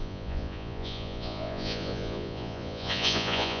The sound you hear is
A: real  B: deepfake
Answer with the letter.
B